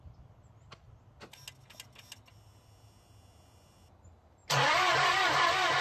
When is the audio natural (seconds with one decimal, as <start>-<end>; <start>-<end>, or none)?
0.0-5.8